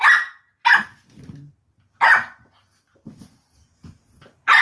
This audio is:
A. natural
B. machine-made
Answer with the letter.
A